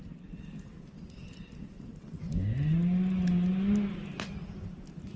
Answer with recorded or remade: recorded